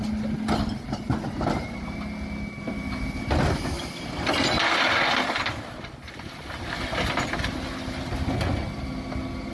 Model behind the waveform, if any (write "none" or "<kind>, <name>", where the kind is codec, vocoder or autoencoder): none